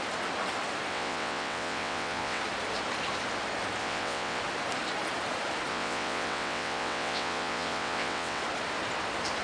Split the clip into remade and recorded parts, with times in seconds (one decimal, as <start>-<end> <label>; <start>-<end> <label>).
0.0-0.9 recorded; 0.9-2.4 remade; 2.4-3.8 recorded; 3.8-4.4 remade; 4.4-5.7 recorded; 5.7-8.4 remade; 8.4-9.4 recorded